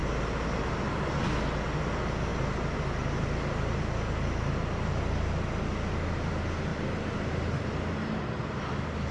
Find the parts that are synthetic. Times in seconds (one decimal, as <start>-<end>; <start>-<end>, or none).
6.7-7.2